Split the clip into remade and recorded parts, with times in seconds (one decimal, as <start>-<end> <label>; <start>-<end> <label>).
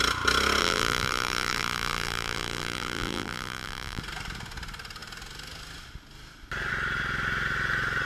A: 0.0-0.6 recorded; 0.6-4.0 remade; 4.0-8.1 recorded